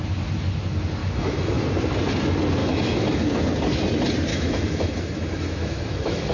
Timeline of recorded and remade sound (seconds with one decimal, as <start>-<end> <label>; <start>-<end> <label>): 0.0-1.0 recorded; 1.0-1.6 remade; 1.6-2.6 recorded; 2.6-3.2 remade; 3.2-4.3 recorded; 4.3-6.3 remade